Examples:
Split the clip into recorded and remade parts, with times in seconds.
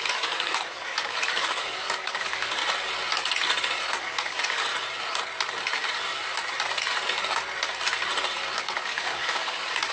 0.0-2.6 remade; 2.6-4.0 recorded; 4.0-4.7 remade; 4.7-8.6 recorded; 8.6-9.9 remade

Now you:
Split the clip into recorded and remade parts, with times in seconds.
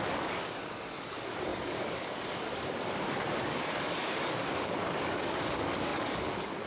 0.0-6.7 remade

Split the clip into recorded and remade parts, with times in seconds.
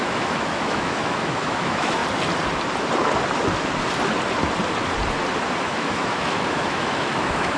0.0-2.0 remade; 2.0-5.6 recorded; 5.6-7.6 remade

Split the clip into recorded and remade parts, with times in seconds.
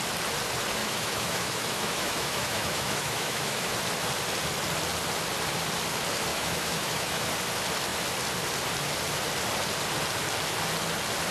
0.0-0.8 recorded; 0.8-3.7 remade; 3.7-6.3 recorded; 6.3-7.2 remade; 7.2-11.3 recorded